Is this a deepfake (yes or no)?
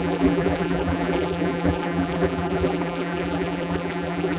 yes